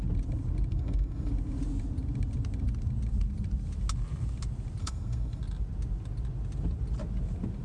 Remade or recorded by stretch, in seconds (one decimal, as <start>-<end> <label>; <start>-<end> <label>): 0.0-0.7 recorded; 0.7-1.3 remade; 1.3-4.8 recorded; 4.8-5.4 remade; 5.4-7.6 recorded